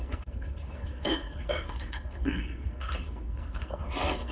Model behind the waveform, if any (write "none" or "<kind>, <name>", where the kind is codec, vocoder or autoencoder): codec, SNAC